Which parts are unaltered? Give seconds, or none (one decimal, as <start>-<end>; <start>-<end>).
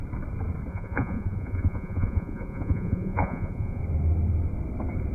0.0-0.7; 3.8-5.1